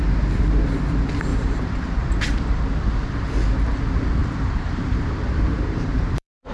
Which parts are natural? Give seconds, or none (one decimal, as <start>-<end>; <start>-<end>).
0.0-1.3; 2.6-4.2